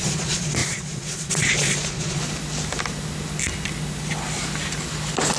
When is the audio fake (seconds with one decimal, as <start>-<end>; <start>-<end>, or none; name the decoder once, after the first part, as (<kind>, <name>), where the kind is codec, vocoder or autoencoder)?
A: 0.0-2.2 (vocoder, Vocos)